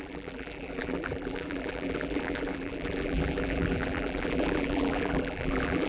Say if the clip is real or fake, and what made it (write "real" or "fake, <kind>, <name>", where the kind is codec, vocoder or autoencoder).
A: fake, vocoder, BigVGAN v2